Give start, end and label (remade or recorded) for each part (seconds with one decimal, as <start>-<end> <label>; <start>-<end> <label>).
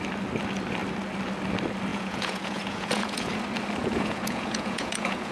0.0-1.9 recorded; 1.9-3.3 remade; 3.3-3.8 recorded; 3.8-5.3 remade